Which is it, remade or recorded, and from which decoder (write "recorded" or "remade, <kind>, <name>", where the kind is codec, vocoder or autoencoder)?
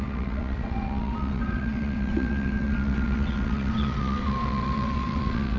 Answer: remade, vocoder, WaveNeXt